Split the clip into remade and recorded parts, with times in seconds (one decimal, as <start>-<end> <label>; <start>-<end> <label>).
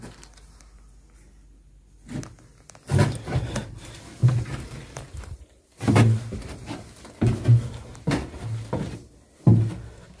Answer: 0.0-4.2 recorded; 4.2-6.9 remade; 6.9-7.8 recorded; 7.8-8.9 remade; 8.9-10.2 recorded